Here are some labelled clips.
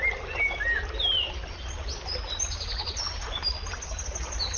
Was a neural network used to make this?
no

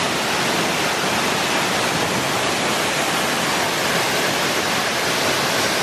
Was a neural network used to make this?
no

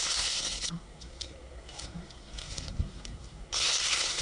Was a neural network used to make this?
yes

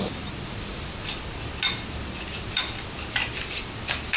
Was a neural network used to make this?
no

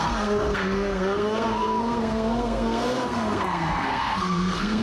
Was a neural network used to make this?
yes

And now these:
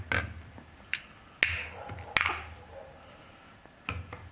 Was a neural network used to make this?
no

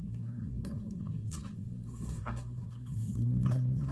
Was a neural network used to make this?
yes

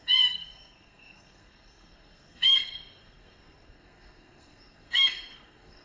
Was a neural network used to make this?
yes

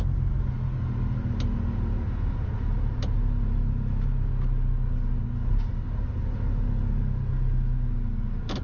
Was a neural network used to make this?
no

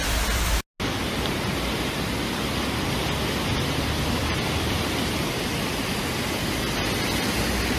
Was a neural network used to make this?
no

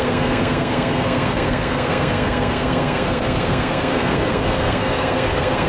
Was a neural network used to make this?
yes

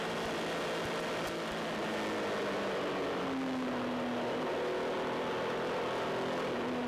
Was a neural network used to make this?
no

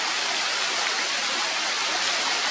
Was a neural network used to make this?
no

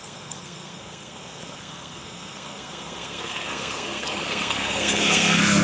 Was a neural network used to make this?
yes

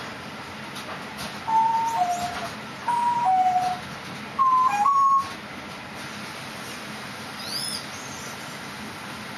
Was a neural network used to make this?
no